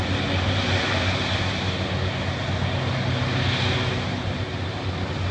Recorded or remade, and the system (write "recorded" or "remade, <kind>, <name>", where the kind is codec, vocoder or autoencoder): recorded